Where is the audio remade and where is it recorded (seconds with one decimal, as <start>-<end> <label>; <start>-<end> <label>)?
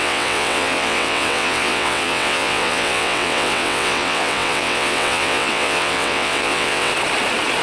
0.0-6.9 remade; 6.9-7.6 recorded